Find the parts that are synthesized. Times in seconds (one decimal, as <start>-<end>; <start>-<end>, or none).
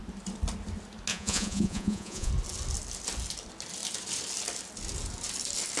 1.1-2.3